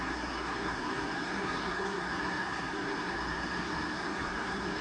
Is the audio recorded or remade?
remade